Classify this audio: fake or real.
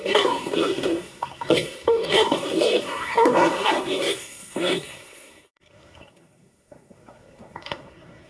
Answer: fake